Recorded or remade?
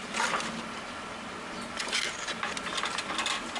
recorded